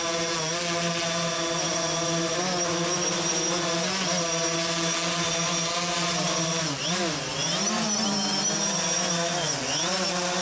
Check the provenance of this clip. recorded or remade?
recorded